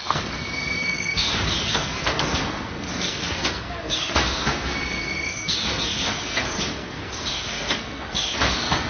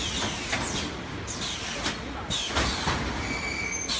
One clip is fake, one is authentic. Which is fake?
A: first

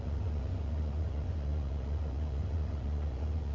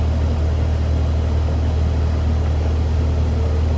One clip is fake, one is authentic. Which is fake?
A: first